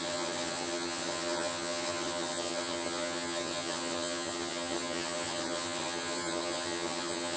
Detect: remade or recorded remade